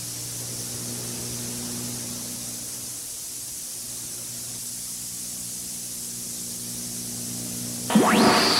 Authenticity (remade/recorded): recorded